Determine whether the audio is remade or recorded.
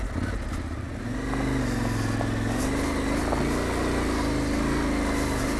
recorded